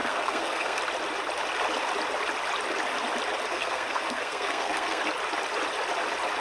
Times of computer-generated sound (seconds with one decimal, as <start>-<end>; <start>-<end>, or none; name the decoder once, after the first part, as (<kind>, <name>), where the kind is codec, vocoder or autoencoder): 0.0-0.8 (codec, SNAC); 3.5-5.0